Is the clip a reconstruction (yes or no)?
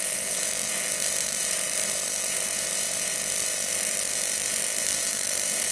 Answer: yes